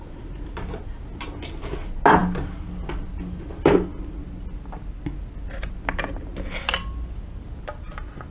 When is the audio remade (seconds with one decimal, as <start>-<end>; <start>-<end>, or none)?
none